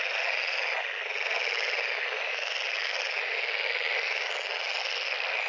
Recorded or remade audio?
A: recorded